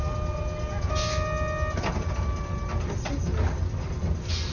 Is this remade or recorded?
recorded